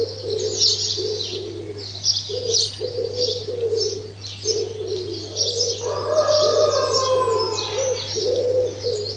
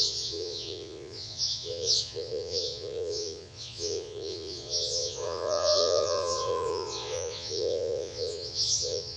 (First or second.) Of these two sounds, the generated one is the second